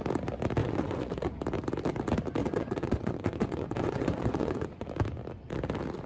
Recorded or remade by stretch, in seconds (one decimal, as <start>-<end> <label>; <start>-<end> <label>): 0.0-0.6 recorded; 0.6-1.3 remade; 1.3-2.4 recorded; 2.4-4.9 remade; 4.9-6.1 recorded